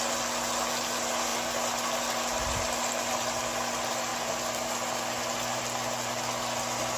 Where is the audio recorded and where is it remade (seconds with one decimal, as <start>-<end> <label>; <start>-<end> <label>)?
0.0-7.0 recorded